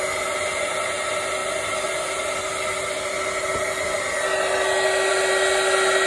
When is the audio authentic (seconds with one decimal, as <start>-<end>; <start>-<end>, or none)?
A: 0.0-6.1